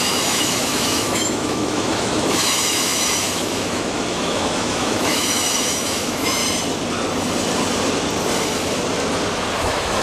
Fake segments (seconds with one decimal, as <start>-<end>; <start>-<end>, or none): 0.0-6.4; 9.6-10.0